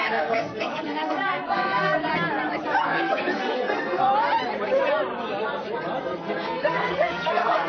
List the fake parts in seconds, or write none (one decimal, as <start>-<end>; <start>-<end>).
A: 0.0-2.1; 2.8-4.1; 6.0-7.7